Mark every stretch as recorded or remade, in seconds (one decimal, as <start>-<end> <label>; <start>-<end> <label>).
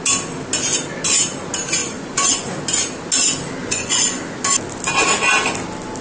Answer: 0.0-1.8 recorded; 1.8-2.6 remade; 2.6-3.6 recorded; 3.6-4.2 remade; 4.2-6.0 recorded